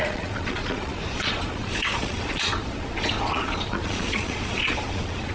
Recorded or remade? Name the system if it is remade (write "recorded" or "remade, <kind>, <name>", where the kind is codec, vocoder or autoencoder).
remade, vocoder, Vocos